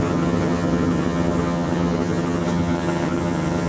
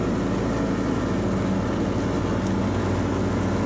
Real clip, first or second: second